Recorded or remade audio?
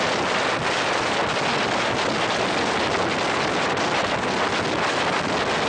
recorded